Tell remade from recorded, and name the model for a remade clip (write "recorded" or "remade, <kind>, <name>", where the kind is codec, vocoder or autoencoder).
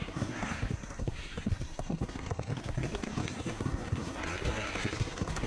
remade, codec, SNAC